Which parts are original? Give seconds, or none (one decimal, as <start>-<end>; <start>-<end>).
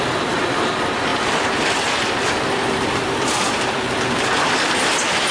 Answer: 0.0-1.1; 4.3-5.3